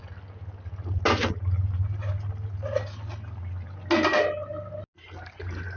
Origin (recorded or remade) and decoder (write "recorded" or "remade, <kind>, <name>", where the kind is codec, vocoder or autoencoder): recorded